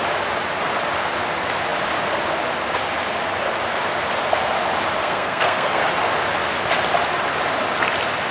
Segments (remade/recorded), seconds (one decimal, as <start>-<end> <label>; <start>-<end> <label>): 0.0-5.0 recorded; 5.0-5.8 remade; 5.8-8.3 recorded